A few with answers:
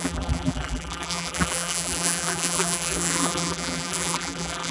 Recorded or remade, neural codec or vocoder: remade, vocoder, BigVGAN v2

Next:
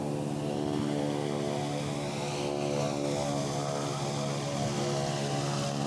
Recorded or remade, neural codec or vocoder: recorded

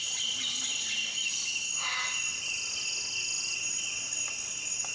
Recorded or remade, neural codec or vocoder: recorded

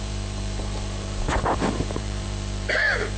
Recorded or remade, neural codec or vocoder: remade, vocoder, BigVGAN v2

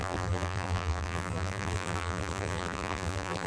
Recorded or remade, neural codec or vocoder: remade, vocoder, BigVGAN v2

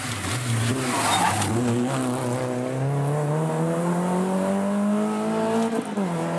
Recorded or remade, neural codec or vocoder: recorded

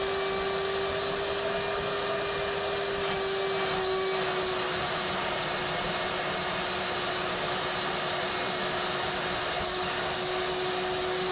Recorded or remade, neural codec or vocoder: recorded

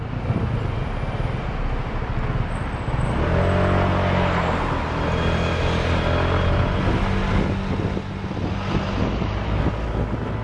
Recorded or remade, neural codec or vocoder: recorded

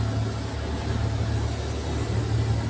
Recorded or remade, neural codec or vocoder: recorded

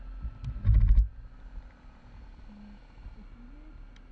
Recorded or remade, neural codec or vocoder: recorded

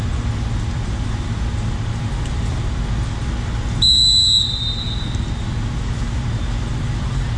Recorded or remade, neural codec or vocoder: recorded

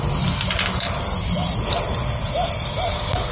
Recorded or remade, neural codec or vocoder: recorded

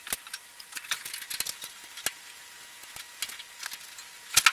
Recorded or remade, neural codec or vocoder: recorded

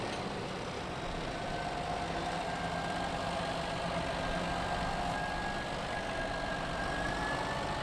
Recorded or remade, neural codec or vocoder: recorded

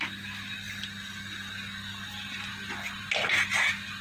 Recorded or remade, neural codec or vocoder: recorded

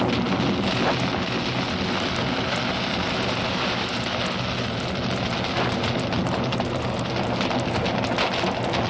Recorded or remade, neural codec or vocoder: recorded